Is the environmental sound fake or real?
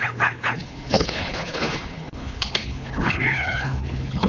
fake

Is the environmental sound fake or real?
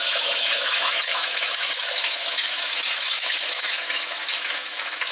fake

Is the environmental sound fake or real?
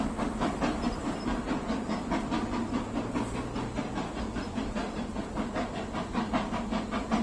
real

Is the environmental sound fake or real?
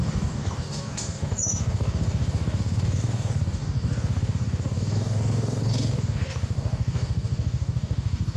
fake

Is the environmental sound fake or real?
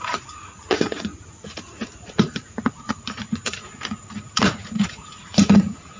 fake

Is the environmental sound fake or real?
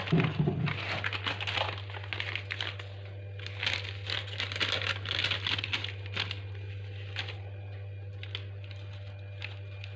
real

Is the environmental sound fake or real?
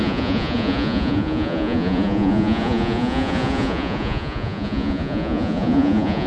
fake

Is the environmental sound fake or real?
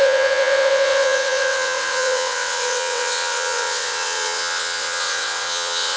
fake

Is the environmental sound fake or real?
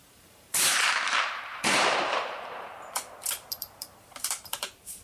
fake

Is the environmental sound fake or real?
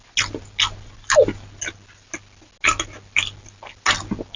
real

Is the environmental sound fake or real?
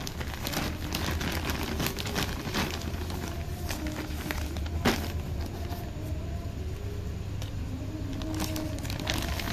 real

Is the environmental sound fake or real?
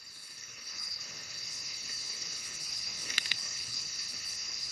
fake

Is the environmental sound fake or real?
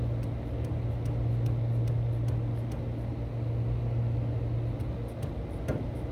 real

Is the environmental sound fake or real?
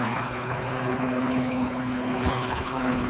fake